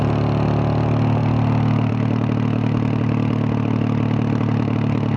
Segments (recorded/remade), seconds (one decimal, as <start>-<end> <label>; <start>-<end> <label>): 0.0-5.2 recorded